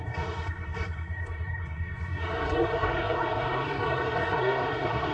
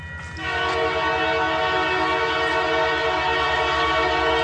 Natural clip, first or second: second